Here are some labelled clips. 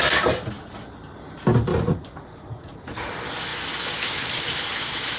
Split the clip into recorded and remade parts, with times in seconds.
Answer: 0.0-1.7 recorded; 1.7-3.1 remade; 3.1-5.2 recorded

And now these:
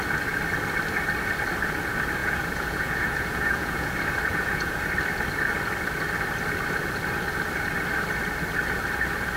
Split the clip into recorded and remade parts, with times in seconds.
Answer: 0.0-2.2 recorded; 2.2-3.9 remade; 3.9-4.3 recorded; 4.3-4.8 remade; 4.8-9.4 recorded